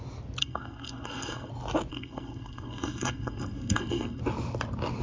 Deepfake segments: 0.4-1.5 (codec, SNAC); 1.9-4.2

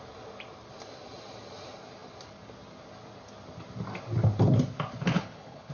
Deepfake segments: 5.1-5.7 (codec, HILCodec)

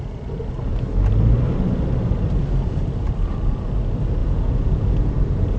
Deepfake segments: 4.2-5.1 (vocoder, Vocos)

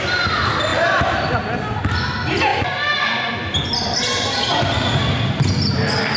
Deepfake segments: 0.7-1.3 (vocoder, BigVGAN v2); 2.5-3.0

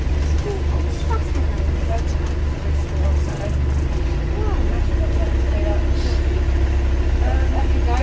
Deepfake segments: none